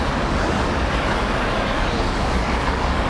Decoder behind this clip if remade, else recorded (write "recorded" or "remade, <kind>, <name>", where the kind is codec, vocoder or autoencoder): remade, codec, DAC